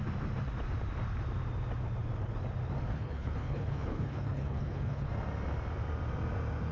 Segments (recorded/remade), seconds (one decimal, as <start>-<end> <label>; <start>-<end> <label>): 0.0-2.9 recorded; 2.9-5.1 remade; 5.1-6.7 recorded